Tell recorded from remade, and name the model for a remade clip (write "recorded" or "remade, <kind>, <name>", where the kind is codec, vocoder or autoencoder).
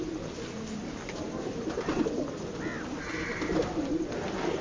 recorded